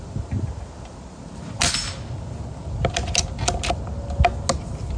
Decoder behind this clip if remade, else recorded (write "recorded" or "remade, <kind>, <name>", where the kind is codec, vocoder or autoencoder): recorded